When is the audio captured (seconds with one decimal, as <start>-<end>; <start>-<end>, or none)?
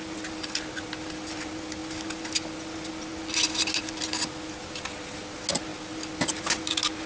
0.0-7.1